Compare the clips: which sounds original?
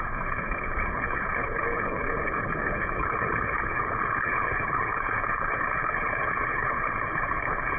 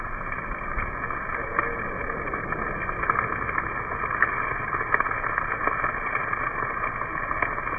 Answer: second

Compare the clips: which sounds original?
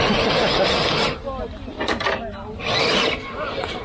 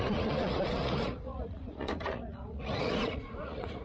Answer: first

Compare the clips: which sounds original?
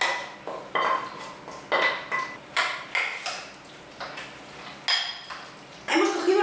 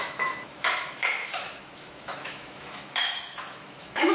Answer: first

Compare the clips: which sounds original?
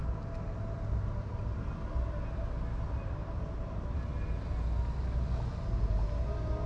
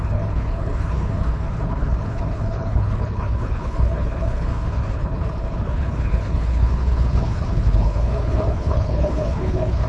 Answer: first